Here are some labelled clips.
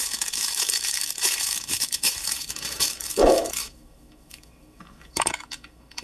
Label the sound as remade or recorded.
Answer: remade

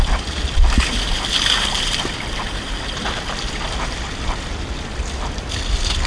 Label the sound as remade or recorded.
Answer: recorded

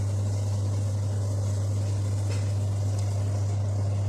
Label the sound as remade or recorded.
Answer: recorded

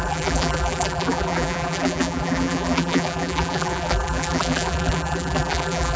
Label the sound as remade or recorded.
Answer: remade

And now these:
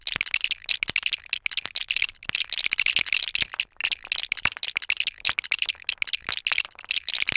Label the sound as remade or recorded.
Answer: recorded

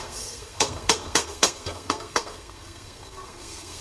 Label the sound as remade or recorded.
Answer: remade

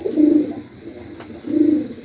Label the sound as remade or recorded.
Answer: recorded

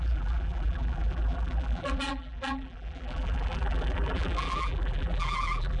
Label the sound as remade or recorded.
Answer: remade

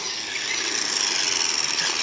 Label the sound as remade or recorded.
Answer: recorded